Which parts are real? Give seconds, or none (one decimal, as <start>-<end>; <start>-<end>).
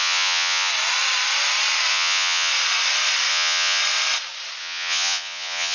0.7-1.9; 2.5-3.3; 3.8-4.6